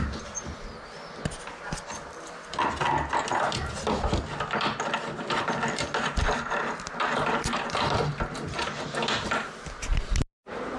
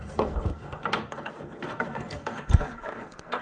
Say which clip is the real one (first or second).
first